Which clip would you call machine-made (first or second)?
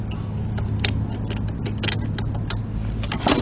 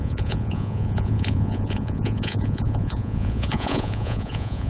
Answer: second